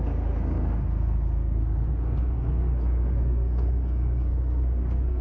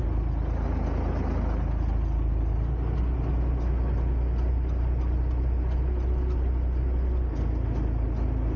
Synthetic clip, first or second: first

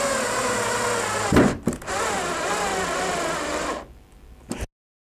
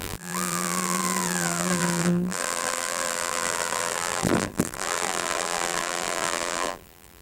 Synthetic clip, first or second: second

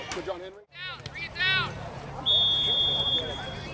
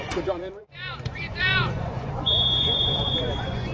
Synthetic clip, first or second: second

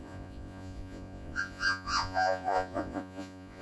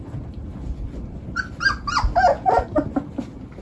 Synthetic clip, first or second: first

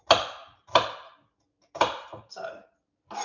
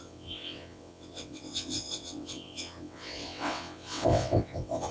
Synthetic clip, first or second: second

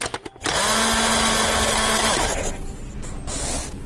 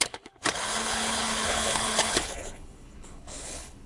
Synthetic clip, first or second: second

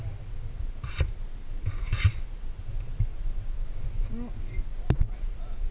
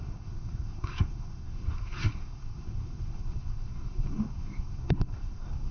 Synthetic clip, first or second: second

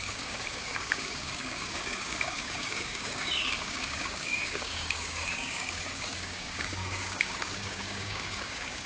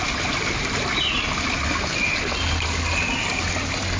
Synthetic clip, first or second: first